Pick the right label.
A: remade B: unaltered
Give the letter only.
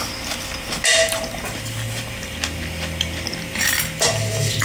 B